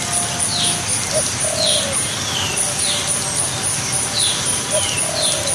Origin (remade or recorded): recorded